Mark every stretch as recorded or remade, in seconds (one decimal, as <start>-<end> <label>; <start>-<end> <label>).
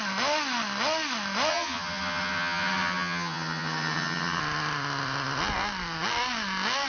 0.0-1.5 recorded; 1.5-4.4 remade; 4.4-6.9 recorded